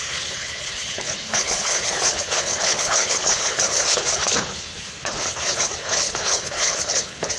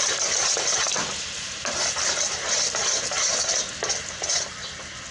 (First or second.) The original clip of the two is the second